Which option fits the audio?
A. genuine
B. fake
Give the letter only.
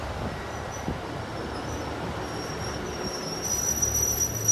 A